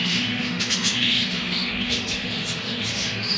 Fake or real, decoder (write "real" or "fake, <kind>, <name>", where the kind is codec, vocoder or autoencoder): fake, autoencoder, DAC-VAE